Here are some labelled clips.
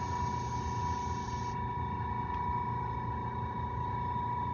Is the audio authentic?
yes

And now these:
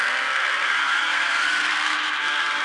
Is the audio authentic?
no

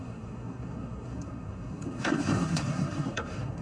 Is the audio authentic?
no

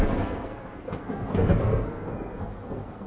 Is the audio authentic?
no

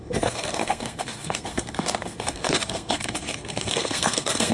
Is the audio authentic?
no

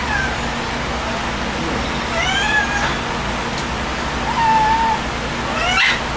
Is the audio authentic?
yes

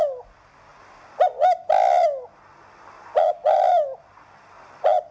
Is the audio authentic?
yes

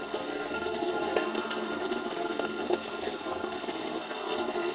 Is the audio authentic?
no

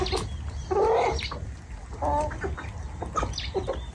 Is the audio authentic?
yes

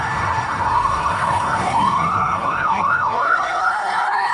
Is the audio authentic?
no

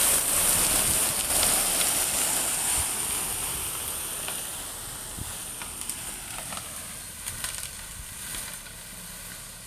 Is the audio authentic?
yes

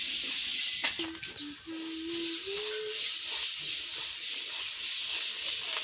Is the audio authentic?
yes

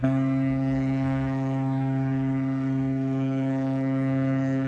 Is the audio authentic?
no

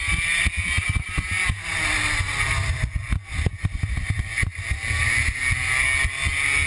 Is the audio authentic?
yes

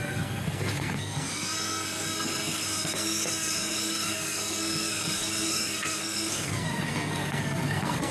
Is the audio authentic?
no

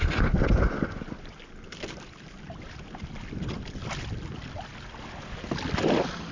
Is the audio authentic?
yes